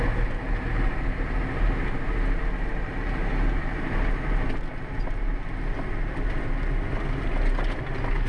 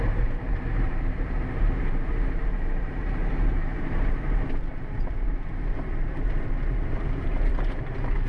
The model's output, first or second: second